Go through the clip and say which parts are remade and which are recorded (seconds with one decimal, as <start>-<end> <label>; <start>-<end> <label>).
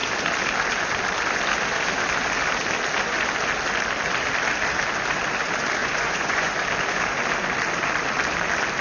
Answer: 0.0-5.8 recorded; 5.8-6.5 remade; 6.5-8.8 recorded